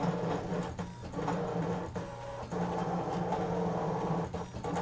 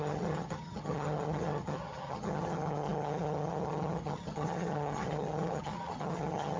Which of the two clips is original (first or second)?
first